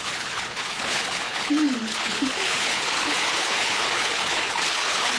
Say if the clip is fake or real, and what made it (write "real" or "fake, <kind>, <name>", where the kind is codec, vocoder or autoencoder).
fake, codec, HILCodec